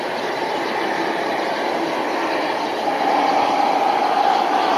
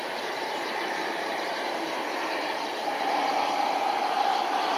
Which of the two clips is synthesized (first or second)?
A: second